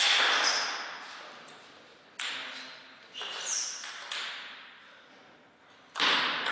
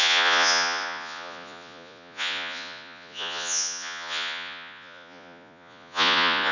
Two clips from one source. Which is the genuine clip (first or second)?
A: first